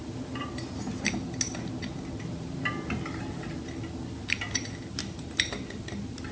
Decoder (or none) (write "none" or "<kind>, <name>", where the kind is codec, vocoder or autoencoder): none